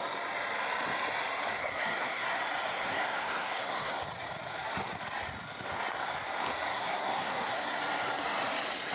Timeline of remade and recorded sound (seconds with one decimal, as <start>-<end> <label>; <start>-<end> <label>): 0.0-1.6 recorded; 1.6-2.3 remade; 2.3-2.7 recorded; 2.7-3.9 remade; 3.9-6.7 recorded; 6.7-7.8 remade; 7.8-8.9 recorded